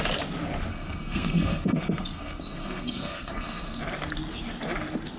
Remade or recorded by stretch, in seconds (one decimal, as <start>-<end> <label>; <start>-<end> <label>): 0.0-0.7 recorded; 0.7-3.8 remade; 3.8-5.2 recorded